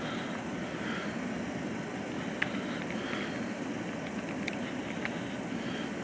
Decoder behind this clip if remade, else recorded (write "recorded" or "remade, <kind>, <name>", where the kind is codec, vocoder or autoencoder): recorded